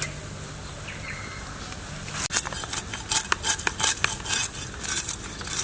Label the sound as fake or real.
real